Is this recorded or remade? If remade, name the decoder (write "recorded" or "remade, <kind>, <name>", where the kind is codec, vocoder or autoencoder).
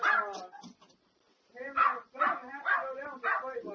recorded